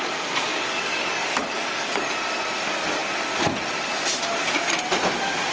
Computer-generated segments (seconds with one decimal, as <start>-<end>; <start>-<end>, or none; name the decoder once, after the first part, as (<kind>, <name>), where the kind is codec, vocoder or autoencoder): 0.5-2.1 (codec, DAC)